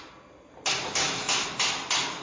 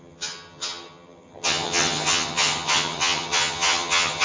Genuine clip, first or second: first